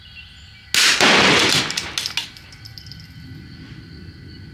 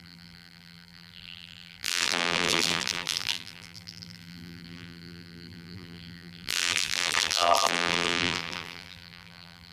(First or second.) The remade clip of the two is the second